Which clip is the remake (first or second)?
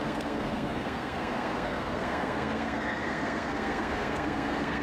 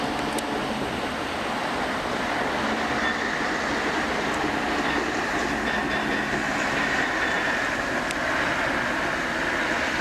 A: first